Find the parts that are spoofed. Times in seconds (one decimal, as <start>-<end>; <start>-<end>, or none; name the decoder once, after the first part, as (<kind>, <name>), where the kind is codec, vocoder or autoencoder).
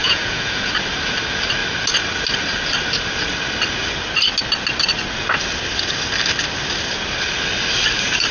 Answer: 0.0-0.7 (vocoder, Vocos)